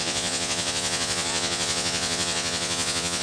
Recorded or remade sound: remade